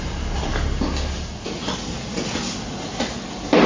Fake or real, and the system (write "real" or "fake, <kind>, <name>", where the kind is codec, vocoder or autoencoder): real